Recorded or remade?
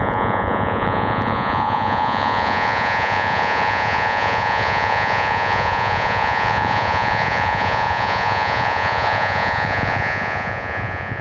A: remade